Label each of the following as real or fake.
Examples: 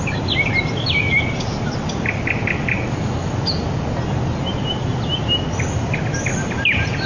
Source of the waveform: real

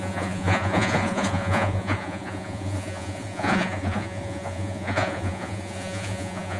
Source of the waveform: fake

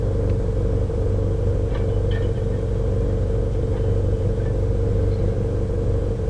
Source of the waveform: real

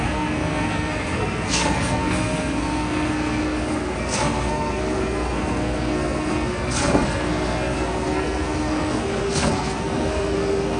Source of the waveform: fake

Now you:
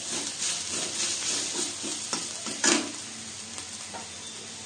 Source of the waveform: real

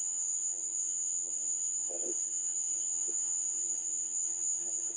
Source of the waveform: fake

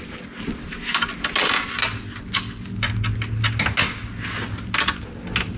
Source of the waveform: real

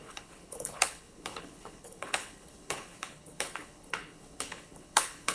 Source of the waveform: fake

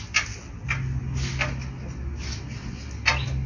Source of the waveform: real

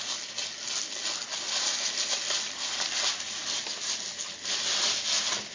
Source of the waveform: real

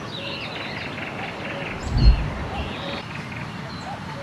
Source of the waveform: real